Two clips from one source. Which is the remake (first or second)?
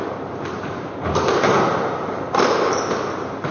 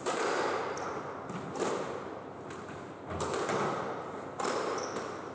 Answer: first